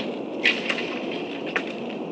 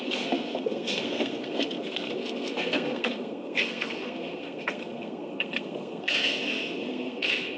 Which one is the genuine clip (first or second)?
first